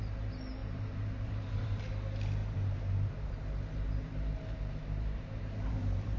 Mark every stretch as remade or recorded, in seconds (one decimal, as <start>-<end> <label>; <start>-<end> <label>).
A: 0.0-0.6 recorded; 0.6-1.8 remade; 1.8-2.4 recorded; 2.4-6.2 remade